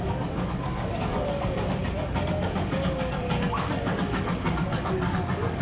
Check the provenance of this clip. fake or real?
fake